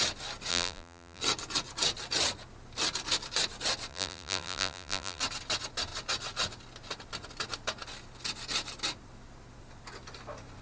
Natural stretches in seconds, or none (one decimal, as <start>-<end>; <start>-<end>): 0.0-0.5; 1.2-3.9; 5.2-10.6

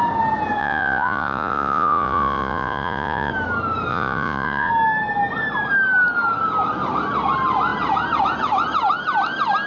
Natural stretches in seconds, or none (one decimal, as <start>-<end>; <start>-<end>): 0.0-0.6; 3.3-3.9; 4.7-9.7

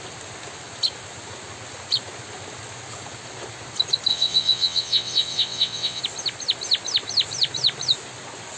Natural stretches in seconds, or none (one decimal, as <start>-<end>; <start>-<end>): 0.0-4.1; 6.0-8.6

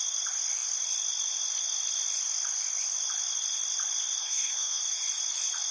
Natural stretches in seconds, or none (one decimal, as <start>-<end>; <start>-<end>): 0.0-4.2; 4.8-5.7